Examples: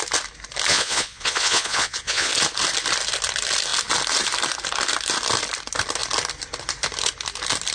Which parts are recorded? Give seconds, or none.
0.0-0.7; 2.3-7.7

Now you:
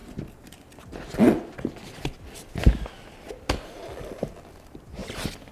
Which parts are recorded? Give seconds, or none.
0.0-5.5

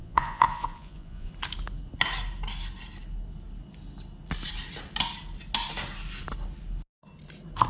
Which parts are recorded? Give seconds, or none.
1.3-7.7

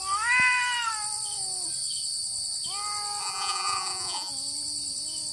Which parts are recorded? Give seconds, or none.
0.0-3.2; 4.3-5.3